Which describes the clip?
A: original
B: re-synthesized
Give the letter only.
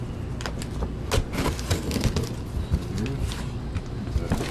A